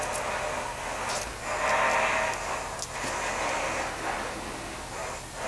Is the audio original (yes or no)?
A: yes